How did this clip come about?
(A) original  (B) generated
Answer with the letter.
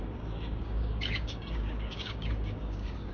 B